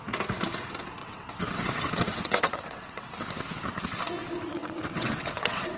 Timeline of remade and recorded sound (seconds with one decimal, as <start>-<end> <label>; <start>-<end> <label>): 0.0-1.0 recorded; 1.0-3.1 remade; 3.1-4.5 recorded; 4.5-5.8 remade